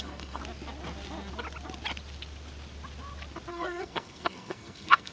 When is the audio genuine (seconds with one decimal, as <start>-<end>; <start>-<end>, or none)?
0.4-3.5